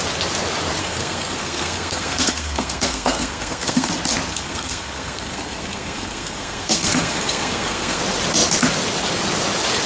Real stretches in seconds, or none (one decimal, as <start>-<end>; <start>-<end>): 0.0-0.8; 3.9-4.3; 8.0-9.9